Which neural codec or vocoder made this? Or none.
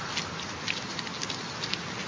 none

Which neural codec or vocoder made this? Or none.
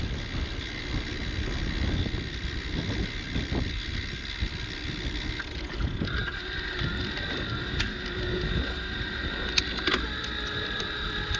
none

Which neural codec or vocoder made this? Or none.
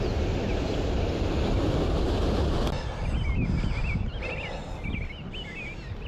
none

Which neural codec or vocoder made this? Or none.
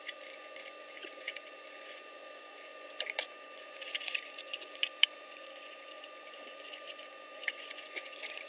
vocoder, Vocos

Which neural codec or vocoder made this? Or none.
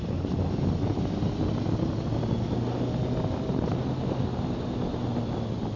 none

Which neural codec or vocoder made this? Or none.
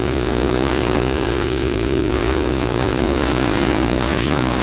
vocoder, Vocos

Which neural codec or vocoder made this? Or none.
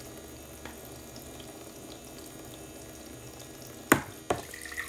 none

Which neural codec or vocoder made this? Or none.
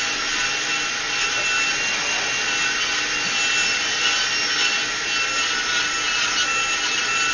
none